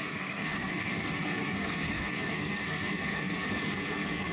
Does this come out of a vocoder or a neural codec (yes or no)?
yes